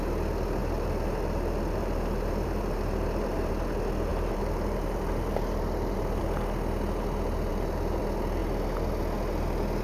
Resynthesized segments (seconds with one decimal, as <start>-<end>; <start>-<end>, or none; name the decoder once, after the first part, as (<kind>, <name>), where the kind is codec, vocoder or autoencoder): 0.6-3.5 (vocoder, BigVGAN v2); 4.1-6.2; 7.5-8.0